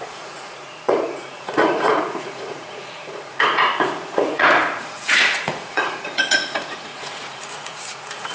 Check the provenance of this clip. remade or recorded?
remade